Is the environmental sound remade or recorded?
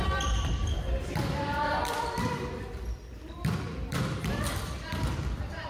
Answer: remade